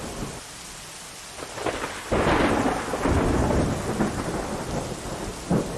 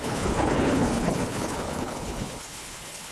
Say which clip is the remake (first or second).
second